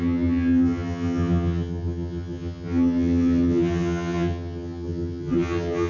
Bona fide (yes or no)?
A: no